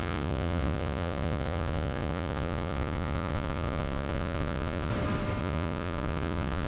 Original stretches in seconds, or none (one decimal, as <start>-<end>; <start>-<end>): 4.9-5.4